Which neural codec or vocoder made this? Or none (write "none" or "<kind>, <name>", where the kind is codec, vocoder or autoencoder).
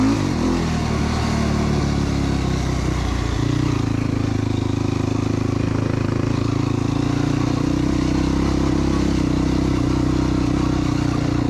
none